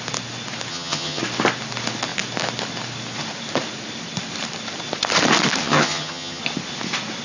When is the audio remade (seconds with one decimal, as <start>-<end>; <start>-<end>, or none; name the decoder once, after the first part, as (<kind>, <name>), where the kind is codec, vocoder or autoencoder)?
0.7-1.2 (vocoder, HiFi-GAN); 5.6-6.4